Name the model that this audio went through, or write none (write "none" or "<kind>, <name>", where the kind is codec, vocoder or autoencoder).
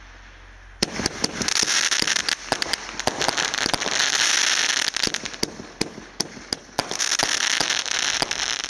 none